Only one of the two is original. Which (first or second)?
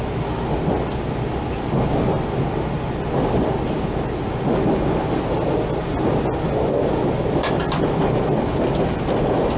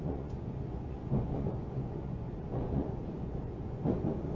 first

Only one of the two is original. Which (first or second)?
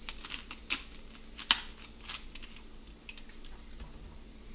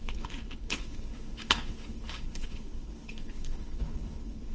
first